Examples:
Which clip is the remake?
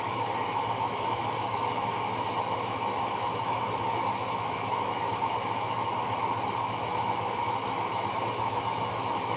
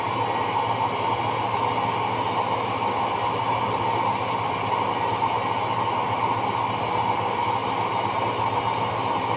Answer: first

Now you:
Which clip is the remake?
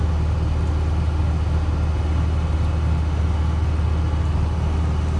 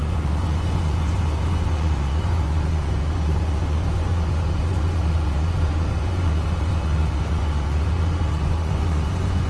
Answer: second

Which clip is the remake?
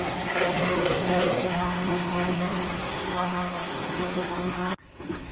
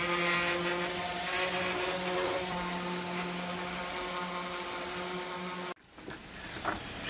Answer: first